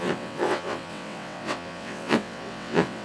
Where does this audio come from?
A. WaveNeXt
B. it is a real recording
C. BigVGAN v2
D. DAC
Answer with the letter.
A